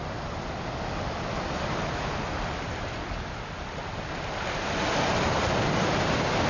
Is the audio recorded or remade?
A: recorded